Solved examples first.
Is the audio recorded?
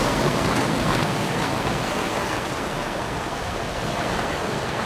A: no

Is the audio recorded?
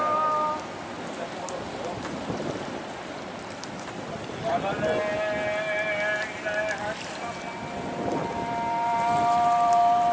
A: yes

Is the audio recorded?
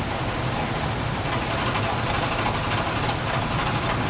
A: yes